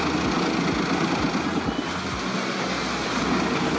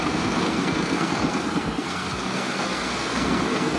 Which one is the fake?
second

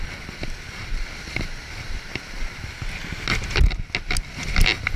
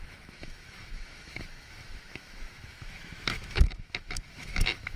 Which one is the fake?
second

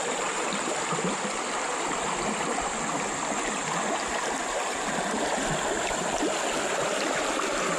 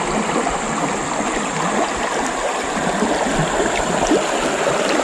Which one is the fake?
first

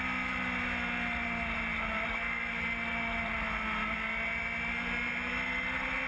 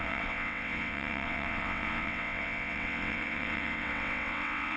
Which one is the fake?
second